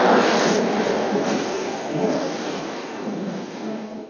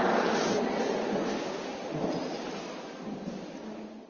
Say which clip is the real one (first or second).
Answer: second